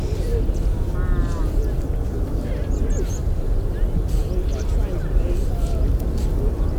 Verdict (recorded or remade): recorded